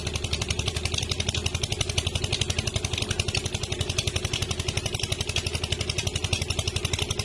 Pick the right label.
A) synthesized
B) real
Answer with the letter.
B